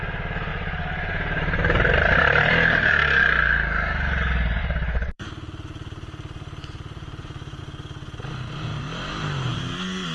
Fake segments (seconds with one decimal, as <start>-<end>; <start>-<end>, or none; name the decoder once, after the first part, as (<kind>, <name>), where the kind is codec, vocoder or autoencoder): 0.5-2.5 (vocoder, BigVGAN v2); 4.6-7.6; 8.7-9.5